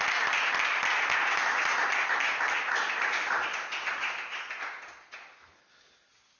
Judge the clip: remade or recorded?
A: recorded